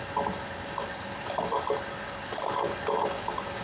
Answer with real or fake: real